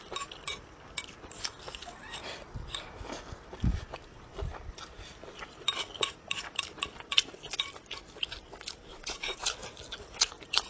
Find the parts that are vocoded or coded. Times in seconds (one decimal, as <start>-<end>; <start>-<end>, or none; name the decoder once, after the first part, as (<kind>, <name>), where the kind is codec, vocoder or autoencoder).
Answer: 8.9-9.5 (vocoder, Vocos)